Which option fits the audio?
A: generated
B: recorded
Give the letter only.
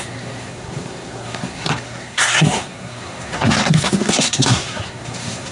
A